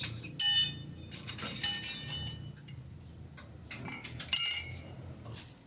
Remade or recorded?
recorded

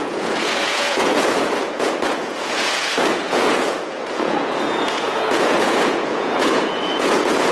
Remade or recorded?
remade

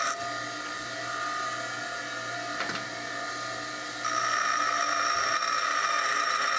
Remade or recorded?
recorded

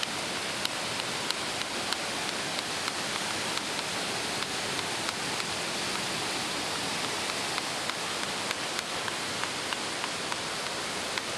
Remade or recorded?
recorded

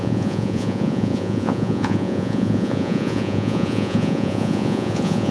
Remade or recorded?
remade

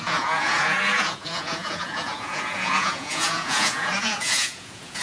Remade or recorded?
remade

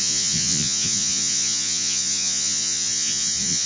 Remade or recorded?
remade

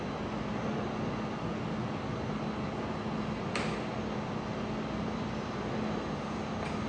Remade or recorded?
recorded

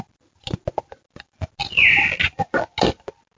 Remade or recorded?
recorded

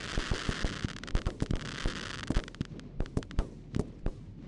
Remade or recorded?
recorded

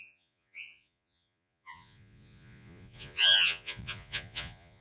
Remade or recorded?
remade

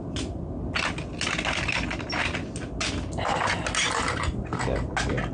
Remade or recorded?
recorded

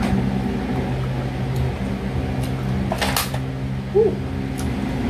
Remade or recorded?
recorded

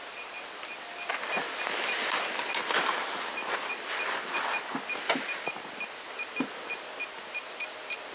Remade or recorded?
recorded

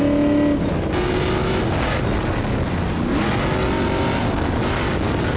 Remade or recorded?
recorded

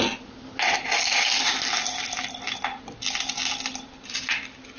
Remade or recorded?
recorded